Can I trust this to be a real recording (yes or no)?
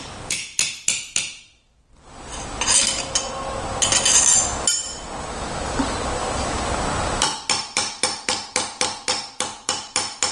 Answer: yes